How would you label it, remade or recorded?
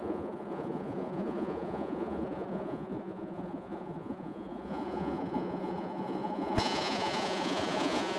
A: remade